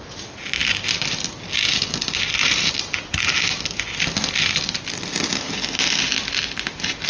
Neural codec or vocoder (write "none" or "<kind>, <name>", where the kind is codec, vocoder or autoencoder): none